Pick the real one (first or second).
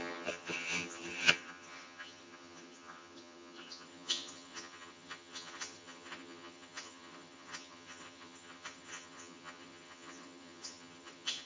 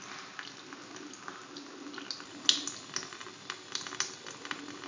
second